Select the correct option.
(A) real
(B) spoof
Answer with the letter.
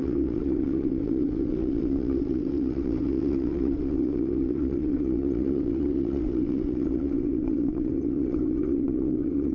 B